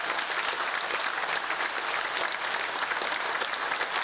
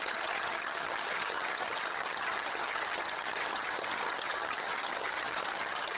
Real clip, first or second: first